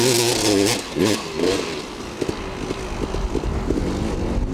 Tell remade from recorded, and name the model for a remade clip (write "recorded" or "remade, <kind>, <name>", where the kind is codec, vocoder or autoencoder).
recorded